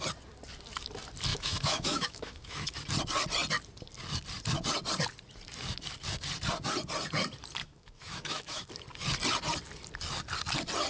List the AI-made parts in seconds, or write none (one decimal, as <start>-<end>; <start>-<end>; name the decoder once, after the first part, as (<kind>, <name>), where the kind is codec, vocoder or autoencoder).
1.3-2.8 (autoencoder, DAC-VAE); 7.6-8.7